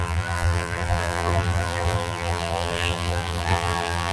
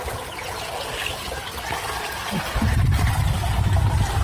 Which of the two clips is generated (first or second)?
first